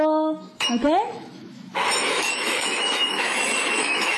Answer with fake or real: fake